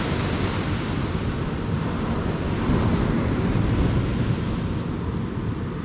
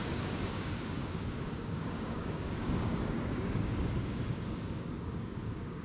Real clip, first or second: first